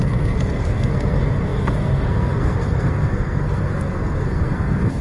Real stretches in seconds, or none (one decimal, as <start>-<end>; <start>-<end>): none